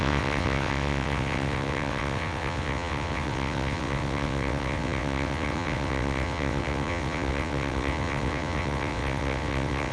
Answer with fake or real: fake